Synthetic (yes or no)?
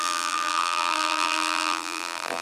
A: yes